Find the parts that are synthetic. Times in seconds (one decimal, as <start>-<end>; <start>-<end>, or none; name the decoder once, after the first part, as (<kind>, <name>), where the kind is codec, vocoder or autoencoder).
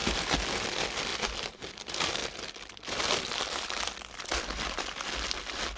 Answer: 0.7-5.8 (vocoder, BigVGAN v2)